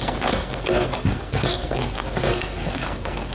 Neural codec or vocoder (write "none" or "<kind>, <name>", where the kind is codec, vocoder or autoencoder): codec, SNAC